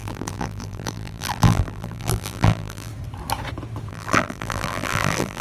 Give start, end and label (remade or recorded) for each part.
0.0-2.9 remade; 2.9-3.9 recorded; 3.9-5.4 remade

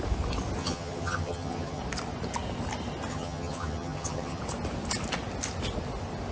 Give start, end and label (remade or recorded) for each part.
0.0-0.6 recorded; 0.6-1.8 remade; 1.8-3.1 recorded; 3.1-4.4 remade; 4.4-6.3 recorded

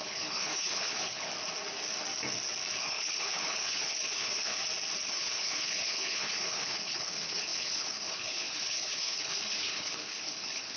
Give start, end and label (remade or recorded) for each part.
0.0-1.3 remade; 1.3-2.8 recorded; 2.8-4.6 remade; 4.6-5.1 recorded; 5.1-10.8 remade

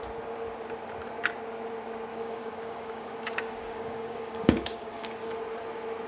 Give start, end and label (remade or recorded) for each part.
0.0-2.1 recorded; 2.1-5.3 remade; 5.3-6.1 recorded